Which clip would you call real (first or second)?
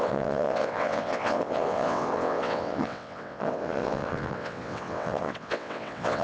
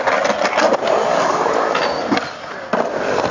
second